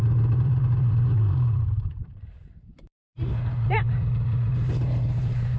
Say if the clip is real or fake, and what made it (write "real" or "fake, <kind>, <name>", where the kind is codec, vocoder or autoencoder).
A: fake, vocoder, BigVGAN v2